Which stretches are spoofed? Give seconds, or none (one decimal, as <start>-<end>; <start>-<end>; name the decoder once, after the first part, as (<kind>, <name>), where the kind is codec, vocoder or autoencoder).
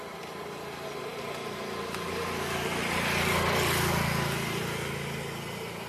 none